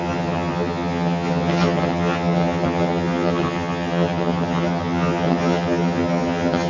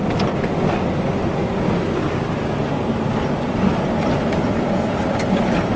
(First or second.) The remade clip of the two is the first